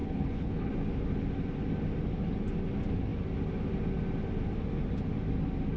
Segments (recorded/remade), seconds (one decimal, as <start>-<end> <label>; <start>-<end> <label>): 0.0-0.7 remade; 0.7-5.8 recorded